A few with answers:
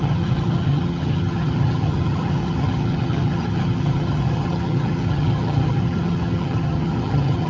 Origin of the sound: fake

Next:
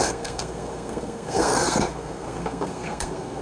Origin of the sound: fake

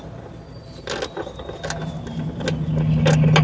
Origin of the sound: real